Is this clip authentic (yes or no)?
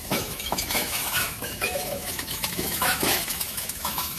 no